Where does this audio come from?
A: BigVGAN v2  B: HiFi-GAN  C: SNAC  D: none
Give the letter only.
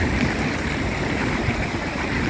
D